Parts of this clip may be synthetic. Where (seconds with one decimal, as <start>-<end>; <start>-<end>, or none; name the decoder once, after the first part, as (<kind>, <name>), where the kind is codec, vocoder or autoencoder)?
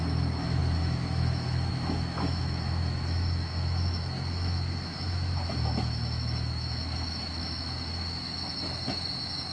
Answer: 0.0-9.5 (autoencoder, DAC-VAE)